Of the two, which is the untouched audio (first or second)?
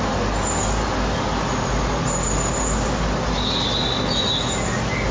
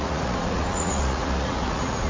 first